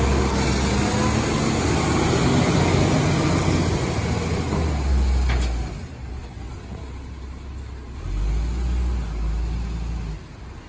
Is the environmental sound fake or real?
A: real